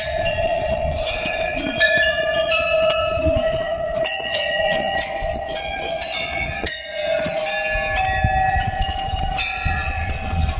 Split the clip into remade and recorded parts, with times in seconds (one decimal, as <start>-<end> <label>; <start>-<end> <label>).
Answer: 0.0-7.4 remade; 7.4-8.5 recorded; 8.5-10.6 remade